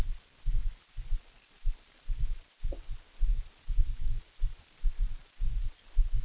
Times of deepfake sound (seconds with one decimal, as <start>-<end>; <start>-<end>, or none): none